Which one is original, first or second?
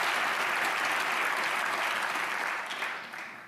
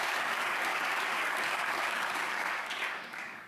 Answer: first